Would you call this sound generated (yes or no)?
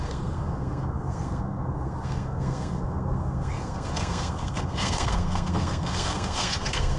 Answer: yes